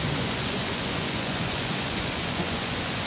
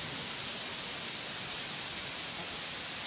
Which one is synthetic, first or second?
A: first